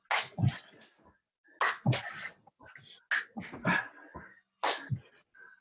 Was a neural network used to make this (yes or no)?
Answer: no